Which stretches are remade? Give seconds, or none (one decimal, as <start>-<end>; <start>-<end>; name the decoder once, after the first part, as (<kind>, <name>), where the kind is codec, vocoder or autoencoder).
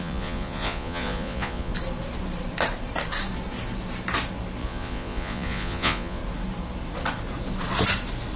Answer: 0.0-1.7 (vocoder, Vocos); 4.6-6.2